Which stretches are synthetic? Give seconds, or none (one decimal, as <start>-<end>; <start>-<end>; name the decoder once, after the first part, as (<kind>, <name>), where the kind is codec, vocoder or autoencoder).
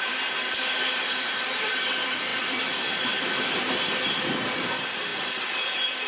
0.0-5.1 (vocoder, BigVGAN v2)